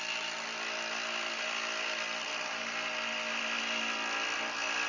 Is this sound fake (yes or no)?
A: no